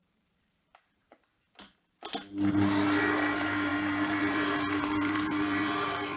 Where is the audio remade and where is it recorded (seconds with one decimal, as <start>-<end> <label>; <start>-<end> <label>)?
0.0-1.3 remade; 1.3-3.0 recorded; 3.0-6.2 remade